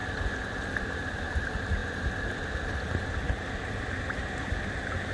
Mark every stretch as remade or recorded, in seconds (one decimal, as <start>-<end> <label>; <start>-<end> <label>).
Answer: 0.0-5.1 recorded